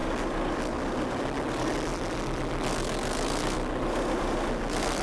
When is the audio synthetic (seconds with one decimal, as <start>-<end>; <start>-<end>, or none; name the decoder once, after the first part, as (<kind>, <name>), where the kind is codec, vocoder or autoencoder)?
1.9-2.5 (vocoder, BigVGAN v2)